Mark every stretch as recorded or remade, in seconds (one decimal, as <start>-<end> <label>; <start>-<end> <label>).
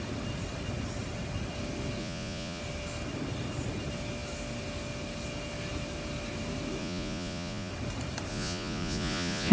0.0-2.0 recorded; 2.0-2.6 remade; 2.6-6.8 recorded; 6.8-7.7 remade; 7.7-8.3 recorded; 8.3-9.5 remade